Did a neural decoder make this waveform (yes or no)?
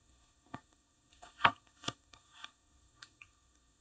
yes